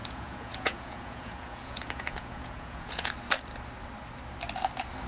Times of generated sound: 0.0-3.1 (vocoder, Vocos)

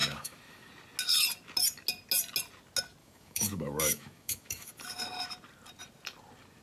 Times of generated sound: 0.0-0.7 (autoencoder, DAC-VAE); 3.0-4.7

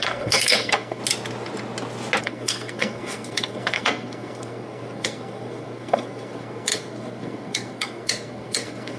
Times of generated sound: 0.0-1.0 (codec, SNAC); 2.2-9.0

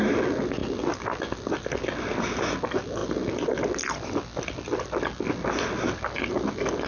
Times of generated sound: 3.0-5.2 (vocoder, BigVGAN v2)

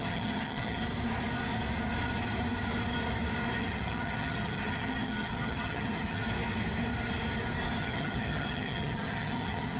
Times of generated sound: 0.0-0.8 (vocoder, HiFi-GAN); 3.6-6.2; 7.8-9.8

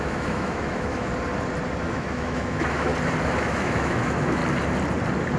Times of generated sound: 0.0-1.1 (autoencoder, DAC-VAE); 1.8-2.9; 3.4-4.4